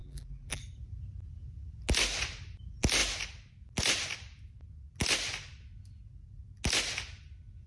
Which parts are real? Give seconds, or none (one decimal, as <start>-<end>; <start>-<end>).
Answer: 0.6-7.7